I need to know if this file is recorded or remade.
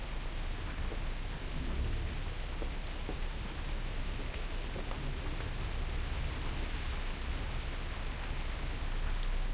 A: recorded